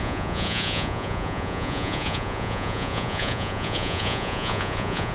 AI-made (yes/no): yes